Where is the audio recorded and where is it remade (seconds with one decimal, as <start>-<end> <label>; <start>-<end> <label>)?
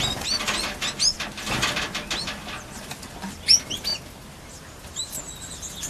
0.0-5.9 recorded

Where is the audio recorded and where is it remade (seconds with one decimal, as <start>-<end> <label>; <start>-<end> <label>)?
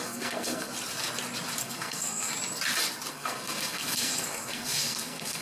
0.0-0.7 remade; 0.7-1.6 recorded; 1.6-2.3 remade; 2.3-3.1 recorded; 3.1-5.4 remade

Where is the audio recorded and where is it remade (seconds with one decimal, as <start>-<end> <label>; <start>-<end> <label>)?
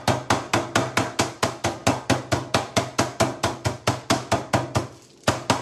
0.0-5.6 recorded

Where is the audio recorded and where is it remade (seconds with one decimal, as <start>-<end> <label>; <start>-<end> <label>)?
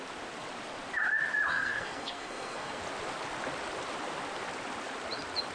0.0-1.5 recorded; 1.5-2.8 remade; 2.8-5.5 recorded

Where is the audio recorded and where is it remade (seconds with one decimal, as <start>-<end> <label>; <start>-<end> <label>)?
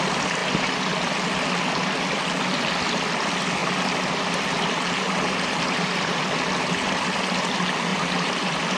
0.0-3.6 recorded; 3.6-6.7 remade; 6.7-7.9 recorded; 7.9-8.8 remade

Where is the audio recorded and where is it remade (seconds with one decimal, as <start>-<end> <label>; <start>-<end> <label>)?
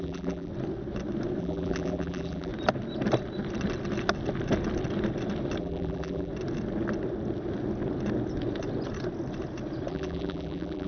0.0-0.5 remade; 0.5-1.4 recorded; 1.4-2.5 remade; 2.5-5.6 recorded; 5.6-6.3 remade; 6.3-9.9 recorded; 9.9-10.9 remade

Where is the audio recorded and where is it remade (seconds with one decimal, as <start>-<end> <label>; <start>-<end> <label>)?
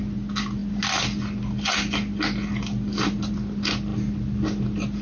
0.0-5.0 recorded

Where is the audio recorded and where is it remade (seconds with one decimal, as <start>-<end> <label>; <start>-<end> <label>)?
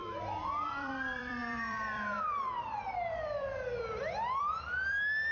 0.0-5.3 remade